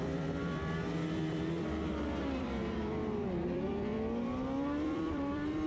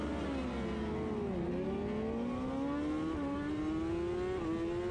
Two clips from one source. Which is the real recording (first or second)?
second